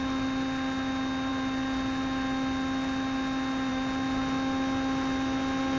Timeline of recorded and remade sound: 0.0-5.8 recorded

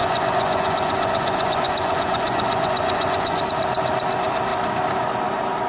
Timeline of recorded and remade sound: 0.0-3.4 remade; 3.4-5.7 recorded

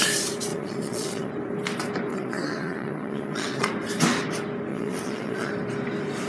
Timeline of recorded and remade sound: 0.0-0.5 recorded; 0.5-1.3 remade; 1.3-2.1 recorded; 2.1-3.7 remade; 3.7-4.7 recorded; 4.7-5.5 remade; 5.5-6.3 recorded

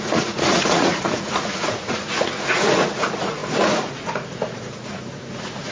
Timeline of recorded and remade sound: 0.0-5.7 remade

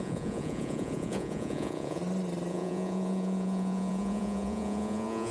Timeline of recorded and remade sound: 0.0-2.0 remade; 2.0-2.5 recorded; 2.5-5.3 remade

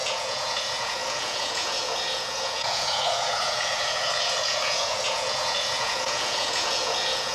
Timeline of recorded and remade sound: 0.0-7.3 remade

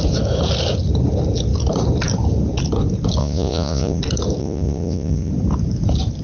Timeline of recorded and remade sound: 0.0-3.2 recorded; 3.2-4.0 remade; 4.0-4.4 recorded; 4.4-5.3 remade; 5.3-6.2 recorded